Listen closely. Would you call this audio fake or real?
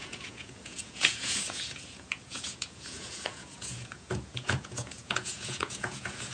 fake